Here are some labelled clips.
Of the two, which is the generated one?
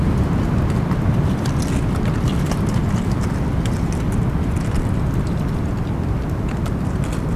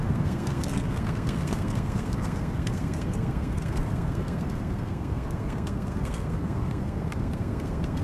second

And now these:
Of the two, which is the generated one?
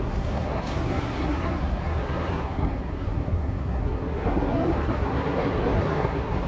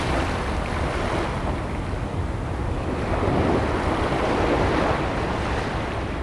first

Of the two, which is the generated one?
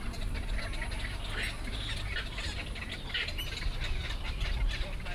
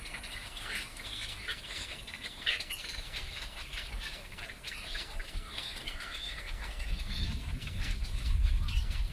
second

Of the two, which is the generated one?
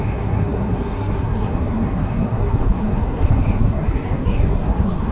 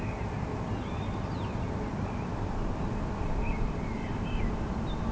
first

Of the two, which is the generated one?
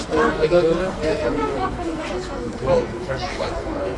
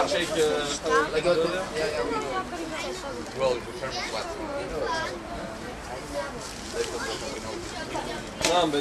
first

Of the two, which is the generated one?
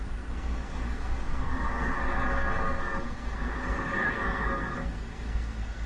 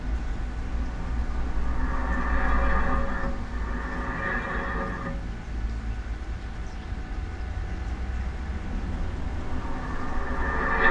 first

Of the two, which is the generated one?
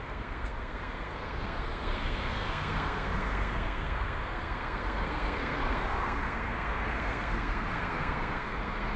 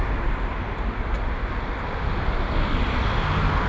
first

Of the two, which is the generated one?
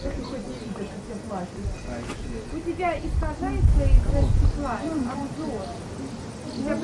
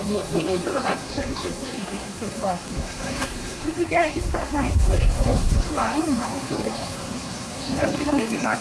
second